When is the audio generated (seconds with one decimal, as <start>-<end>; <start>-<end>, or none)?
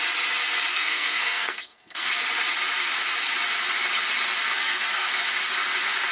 0.7-2.1; 4.6-5.2